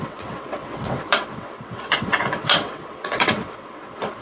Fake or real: fake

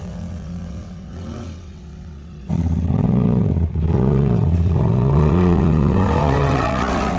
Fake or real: fake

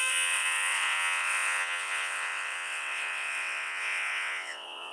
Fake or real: fake